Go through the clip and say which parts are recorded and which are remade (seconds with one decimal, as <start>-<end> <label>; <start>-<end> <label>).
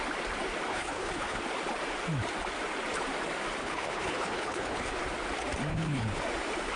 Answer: 0.0-0.7 recorded; 0.7-1.4 remade; 1.4-3.6 recorded; 3.6-5.0 remade; 5.0-5.7 recorded; 5.7-6.2 remade; 6.2-6.8 recorded